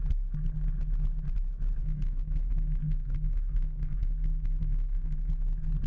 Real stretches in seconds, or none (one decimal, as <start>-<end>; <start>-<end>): 0.0-1.8; 5.3-5.9